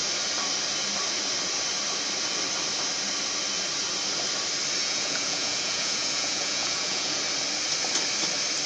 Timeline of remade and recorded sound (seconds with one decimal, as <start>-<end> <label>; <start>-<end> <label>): 0.0-4.8 recorded; 4.8-7.2 remade; 7.2-8.7 recorded